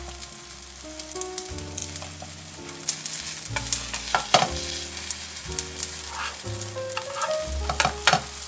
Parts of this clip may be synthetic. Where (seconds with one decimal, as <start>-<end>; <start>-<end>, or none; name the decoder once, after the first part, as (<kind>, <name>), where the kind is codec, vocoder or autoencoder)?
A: none